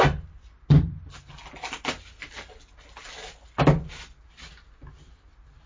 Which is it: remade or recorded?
recorded